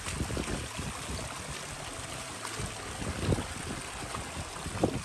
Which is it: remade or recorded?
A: recorded